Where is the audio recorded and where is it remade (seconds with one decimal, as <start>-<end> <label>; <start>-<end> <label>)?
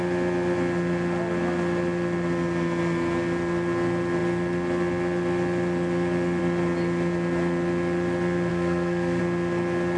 0.0-8.5 recorded; 8.5-9.2 remade; 9.2-10.0 recorded